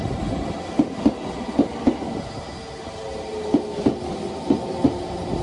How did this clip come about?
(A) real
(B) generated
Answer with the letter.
A